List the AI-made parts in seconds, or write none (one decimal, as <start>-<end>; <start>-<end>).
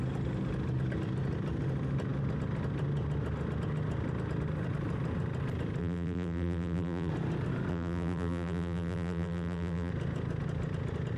5.8-7.1; 7.7-9.9